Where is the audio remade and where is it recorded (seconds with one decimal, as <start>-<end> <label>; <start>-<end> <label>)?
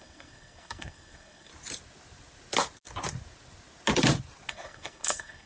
0.0-1.5 remade; 1.5-4.5 recorded; 4.5-5.5 remade